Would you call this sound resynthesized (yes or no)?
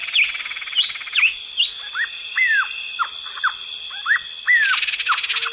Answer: no